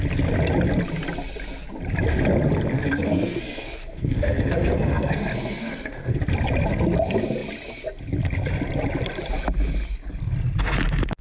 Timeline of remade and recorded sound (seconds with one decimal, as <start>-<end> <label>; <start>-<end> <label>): 0.0-2.7 recorded; 2.7-6.2 remade; 6.2-11.2 recorded